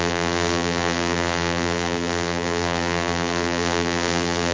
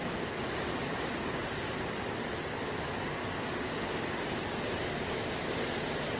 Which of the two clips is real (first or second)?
second